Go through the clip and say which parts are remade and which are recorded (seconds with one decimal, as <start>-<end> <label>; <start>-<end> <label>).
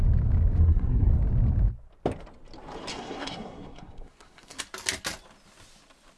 0.0-0.6 recorded; 0.6-1.1 remade; 1.1-2.9 recorded; 2.9-4.6 remade; 4.6-6.2 recorded